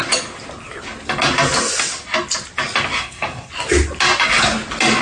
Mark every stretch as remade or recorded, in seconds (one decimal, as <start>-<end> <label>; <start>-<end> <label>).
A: 0.0-3.0 recorded; 3.0-3.5 remade; 3.5-5.0 recorded